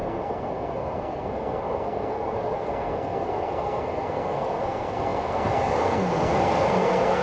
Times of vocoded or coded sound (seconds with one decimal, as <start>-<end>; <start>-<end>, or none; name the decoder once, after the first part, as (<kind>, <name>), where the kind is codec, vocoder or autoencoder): 0.0-7.2 (codec, SNAC)

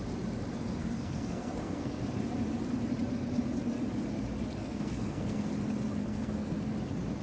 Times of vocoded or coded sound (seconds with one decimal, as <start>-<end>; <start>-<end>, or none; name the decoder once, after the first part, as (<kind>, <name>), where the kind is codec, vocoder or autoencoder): 0.8-2.0 (codec, SNAC); 4.6-5.5; 6.0-6.7

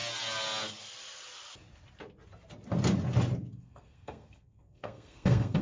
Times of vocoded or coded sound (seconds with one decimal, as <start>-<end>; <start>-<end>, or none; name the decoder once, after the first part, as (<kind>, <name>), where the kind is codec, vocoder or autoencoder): 3.4-5.6 (codec, SNAC)